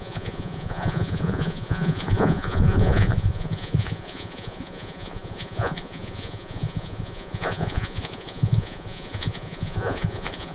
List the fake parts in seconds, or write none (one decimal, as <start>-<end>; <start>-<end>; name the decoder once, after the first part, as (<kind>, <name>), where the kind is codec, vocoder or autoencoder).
0.0-10.5 (vocoder, Vocos)